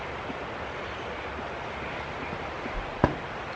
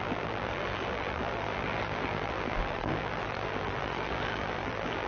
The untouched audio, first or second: first